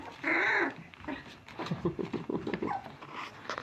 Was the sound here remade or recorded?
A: recorded